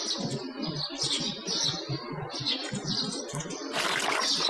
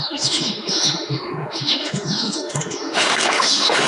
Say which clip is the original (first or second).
first